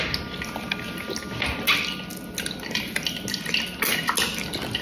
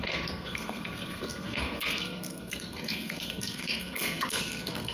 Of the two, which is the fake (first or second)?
second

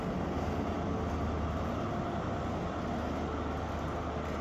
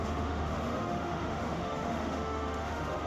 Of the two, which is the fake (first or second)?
second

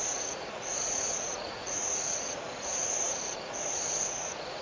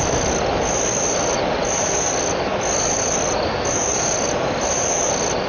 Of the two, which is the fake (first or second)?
first